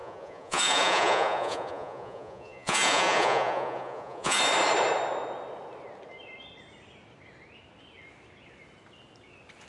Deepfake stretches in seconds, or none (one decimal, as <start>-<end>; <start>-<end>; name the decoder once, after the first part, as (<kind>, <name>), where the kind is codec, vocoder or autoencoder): 0.0-4.4 (vocoder, Vocos)